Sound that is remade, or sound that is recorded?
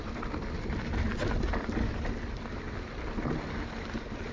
recorded